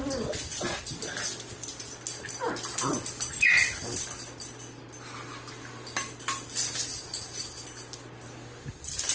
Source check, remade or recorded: recorded